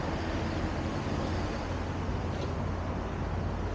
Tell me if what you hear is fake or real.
real